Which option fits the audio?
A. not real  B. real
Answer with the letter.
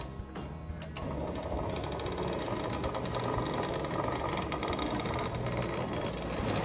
B